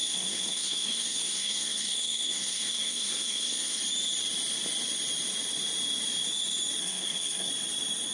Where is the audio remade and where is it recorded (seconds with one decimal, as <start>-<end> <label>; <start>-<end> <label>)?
0.0-3.8 remade; 3.8-6.8 recorded; 6.8-7.5 remade; 7.5-8.1 recorded